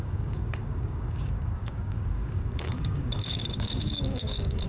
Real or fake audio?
fake